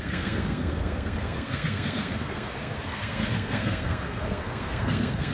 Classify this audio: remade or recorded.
remade